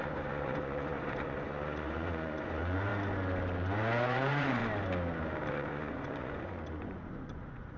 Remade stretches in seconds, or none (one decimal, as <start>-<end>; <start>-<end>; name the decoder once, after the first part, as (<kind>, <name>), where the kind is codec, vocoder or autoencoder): 0.0-2.9 (vocoder, Vocos); 4.0-4.6; 5.5-7.8